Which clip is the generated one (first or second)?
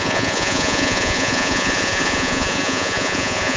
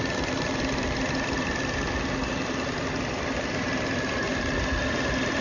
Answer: first